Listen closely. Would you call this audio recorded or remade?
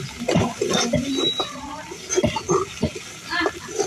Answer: recorded